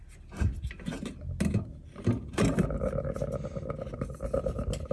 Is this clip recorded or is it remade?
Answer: recorded